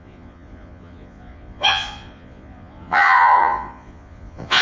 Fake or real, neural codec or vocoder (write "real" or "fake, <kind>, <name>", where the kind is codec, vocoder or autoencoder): fake, vocoder, Vocos